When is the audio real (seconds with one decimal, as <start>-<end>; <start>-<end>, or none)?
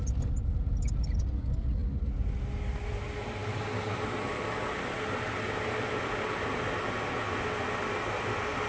0.0-8.7